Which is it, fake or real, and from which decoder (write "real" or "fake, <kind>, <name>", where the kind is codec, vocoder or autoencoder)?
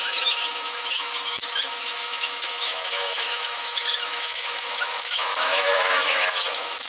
fake, autoencoder, DAC-VAE